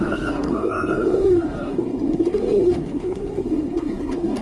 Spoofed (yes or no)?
yes